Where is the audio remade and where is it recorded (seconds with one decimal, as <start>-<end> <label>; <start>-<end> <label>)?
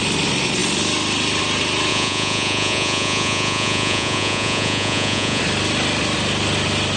0.0-1.9 recorded; 1.9-5.4 remade; 5.4-7.0 recorded